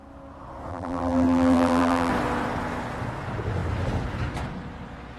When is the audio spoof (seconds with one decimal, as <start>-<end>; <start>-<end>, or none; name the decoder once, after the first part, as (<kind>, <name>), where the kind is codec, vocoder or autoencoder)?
0.7-2.1 (vocoder, BigVGAN v2)